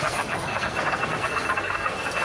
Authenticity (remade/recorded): remade